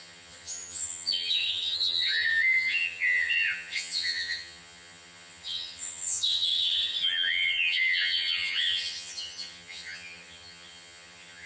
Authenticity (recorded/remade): remade